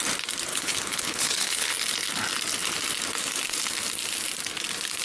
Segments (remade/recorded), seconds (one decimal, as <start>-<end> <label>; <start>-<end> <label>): 0.0-0.5 recorded; 0.5-1.7 remade; 1.7-5.0 recorded